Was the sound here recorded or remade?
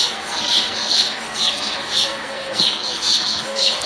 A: remade